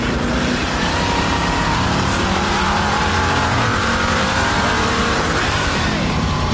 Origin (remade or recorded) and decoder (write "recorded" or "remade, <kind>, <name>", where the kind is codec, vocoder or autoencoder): remade, vocoder, BigVGAN v2